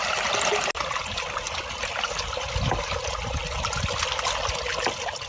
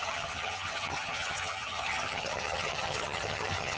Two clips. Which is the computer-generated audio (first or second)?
second